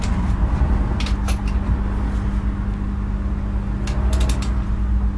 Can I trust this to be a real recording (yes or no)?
yes